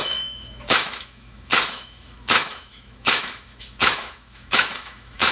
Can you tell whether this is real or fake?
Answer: fake